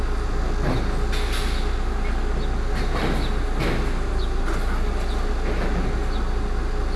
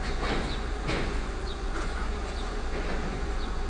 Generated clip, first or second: second